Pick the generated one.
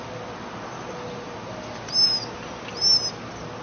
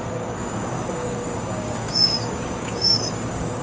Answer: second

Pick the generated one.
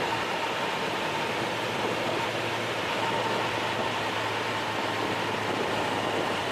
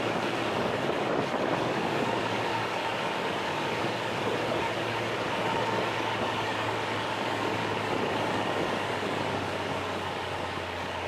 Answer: second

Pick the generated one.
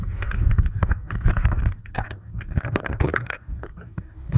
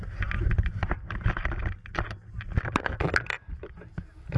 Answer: first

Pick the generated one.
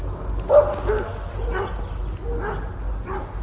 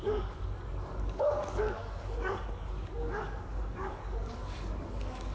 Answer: second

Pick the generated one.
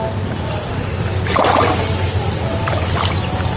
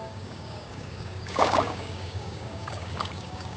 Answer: second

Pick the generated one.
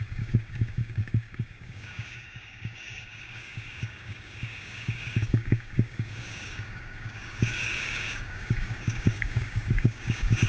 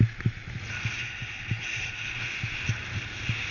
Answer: first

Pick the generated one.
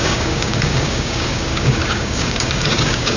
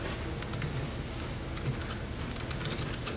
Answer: first